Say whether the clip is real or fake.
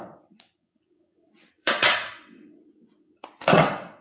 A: fake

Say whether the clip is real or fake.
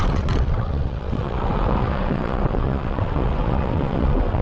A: fake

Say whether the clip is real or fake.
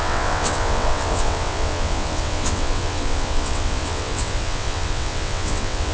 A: fake